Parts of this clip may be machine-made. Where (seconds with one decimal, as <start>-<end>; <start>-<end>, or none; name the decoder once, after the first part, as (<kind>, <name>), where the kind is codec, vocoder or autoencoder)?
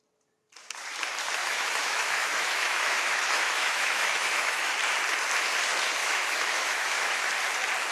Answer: 1.4-4.7 (autoencoder, DAC-VAE); 6.0-7.3